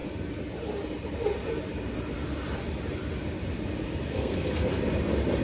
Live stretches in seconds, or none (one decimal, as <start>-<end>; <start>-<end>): 0.0-4.1; 4.7-5.4